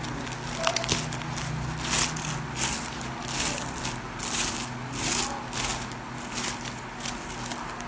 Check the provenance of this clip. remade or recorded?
recorded